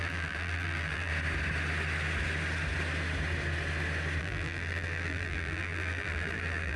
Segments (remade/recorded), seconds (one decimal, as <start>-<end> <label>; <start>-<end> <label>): 0.0-1.1 remade; 1.1-4.2 recorded; 4.2-6.8 remade